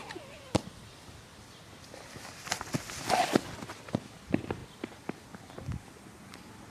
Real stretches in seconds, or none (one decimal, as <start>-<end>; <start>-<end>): 0.0-6.7